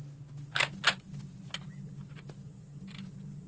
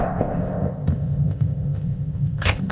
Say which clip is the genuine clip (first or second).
first